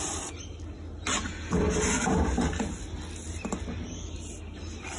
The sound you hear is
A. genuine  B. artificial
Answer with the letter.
A